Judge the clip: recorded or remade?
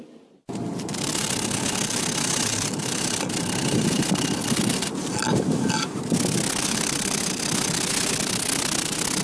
recorded